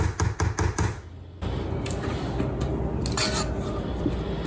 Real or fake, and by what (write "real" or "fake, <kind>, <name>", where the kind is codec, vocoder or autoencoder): real